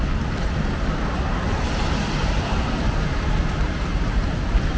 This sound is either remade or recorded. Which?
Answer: remade